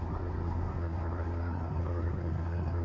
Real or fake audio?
fake